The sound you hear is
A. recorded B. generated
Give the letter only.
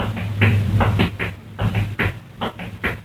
B